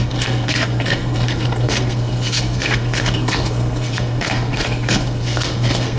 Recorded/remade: remade